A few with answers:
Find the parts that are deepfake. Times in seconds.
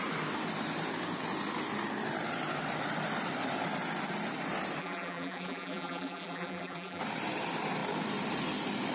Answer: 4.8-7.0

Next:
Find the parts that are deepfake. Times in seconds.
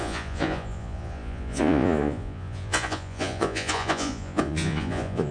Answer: 0.0-5.3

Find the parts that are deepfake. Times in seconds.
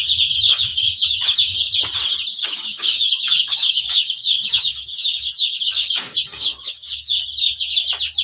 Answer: 0.5-1.6; 2.3-7.2